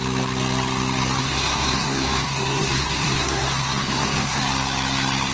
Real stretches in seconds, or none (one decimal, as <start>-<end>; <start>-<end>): 0.0-1.2; 4.4-5.3